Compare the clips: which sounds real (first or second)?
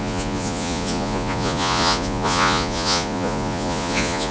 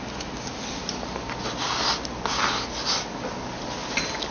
second